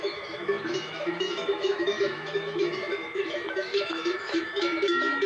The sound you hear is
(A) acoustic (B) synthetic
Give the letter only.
B